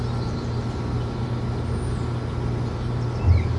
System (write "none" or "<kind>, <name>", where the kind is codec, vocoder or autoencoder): none